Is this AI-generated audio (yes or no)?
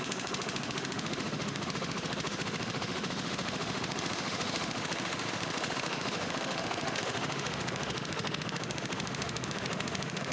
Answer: yes